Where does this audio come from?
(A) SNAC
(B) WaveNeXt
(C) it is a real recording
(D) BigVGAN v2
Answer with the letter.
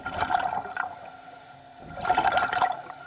C